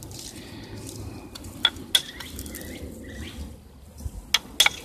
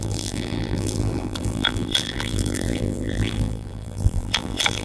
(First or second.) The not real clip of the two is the second